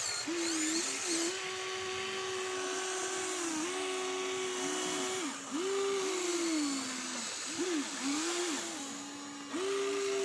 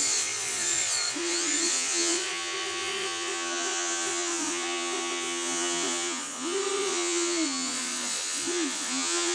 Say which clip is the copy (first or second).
second